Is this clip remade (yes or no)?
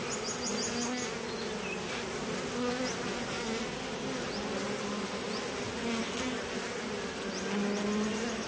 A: no